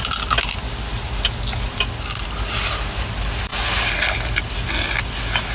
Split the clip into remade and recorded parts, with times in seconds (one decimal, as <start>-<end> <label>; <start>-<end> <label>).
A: 0.0-5.5 recorded